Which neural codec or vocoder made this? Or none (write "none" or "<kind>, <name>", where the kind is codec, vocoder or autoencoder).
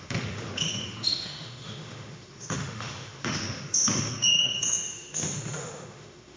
autoencoder, DAC-VAE